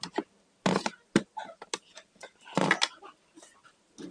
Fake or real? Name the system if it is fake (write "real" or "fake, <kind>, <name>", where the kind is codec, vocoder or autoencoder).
real